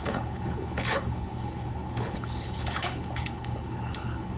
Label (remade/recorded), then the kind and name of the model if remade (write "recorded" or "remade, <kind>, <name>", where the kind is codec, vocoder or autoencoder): remade, codec, HILCodec